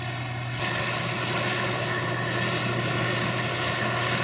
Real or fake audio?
real